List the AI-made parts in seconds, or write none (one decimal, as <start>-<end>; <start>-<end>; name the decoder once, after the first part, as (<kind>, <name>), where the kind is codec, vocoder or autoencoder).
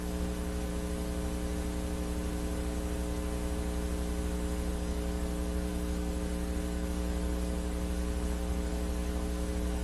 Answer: 0.0-0.7 (codec, DAC); 4.7-9.8